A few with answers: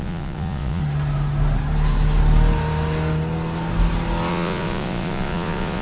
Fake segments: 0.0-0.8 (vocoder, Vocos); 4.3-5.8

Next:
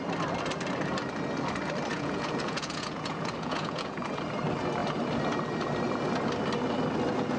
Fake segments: 1.9-4.2 (vocoder, Vocos)

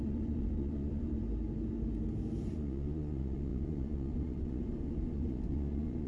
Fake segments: 0.0-1.2 (vocoder, Vocos); 2.5-6.1

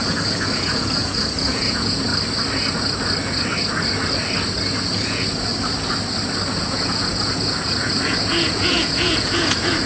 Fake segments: 0.0-2.1 (vocoder, Vocos); 4.8-5.5; 6.5-9.9

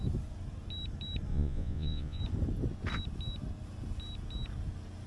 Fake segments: 1.3-2.2 (vocoder, Vocos)

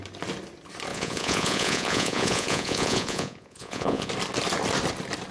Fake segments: 0.9-4.1 (vocoder, Vocos)

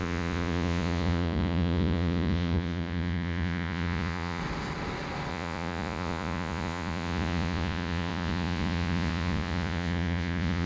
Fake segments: 0.0-4.4 (vocoder, Vocos); 5.3-10.7